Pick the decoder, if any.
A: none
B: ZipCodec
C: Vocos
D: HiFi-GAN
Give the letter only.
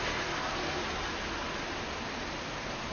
A